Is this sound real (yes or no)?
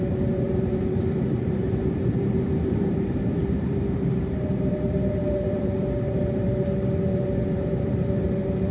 no